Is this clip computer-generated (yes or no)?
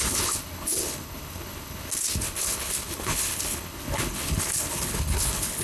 yes